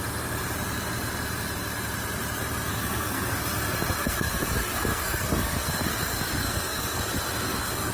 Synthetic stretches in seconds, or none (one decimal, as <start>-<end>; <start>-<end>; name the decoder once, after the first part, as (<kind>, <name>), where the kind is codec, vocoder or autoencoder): 2.7-3.4 (codec, SNAC); 4.0-7.0